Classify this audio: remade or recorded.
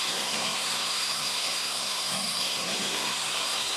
remade